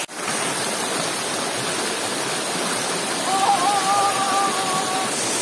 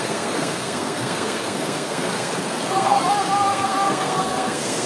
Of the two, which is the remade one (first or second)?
second